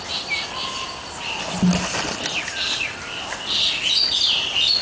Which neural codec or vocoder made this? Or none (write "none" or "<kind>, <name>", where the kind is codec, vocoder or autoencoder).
none